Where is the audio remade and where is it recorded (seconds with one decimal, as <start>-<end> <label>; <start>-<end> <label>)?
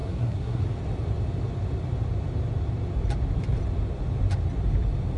0.0-0.6 remade; 0.6-5.2 recorded